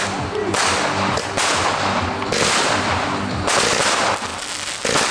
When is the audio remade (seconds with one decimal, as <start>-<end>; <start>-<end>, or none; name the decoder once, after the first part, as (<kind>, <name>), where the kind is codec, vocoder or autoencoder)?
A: none